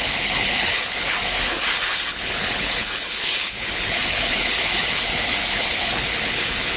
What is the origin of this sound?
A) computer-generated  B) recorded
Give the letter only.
A